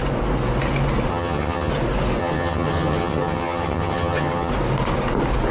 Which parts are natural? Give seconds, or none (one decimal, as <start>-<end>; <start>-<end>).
0.0-1.1; 1.7-2.2; 4.5-5.5